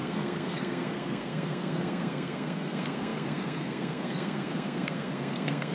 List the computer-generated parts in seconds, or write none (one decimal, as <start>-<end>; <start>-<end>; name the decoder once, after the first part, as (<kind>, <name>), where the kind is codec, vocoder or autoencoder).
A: 0.0-5.7 (codec, SNAC)